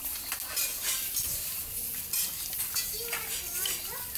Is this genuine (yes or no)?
yes